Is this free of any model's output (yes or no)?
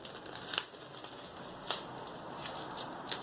yes